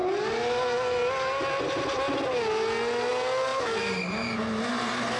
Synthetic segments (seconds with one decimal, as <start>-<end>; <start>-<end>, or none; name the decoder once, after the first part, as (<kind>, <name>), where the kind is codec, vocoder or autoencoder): 3.5-4.4 (vocoder, BigVGAN v2)